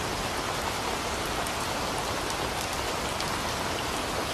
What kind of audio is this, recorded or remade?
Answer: recorded